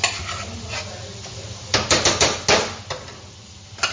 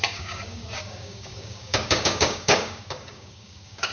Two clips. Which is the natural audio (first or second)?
first